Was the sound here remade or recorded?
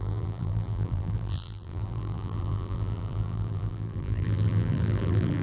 remade